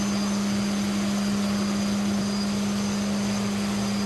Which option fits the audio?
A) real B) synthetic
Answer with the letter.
A